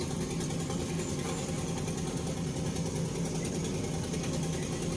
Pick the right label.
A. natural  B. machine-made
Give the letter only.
A